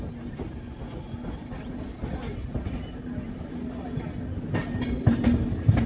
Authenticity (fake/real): real